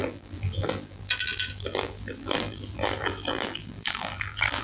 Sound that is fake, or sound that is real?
fake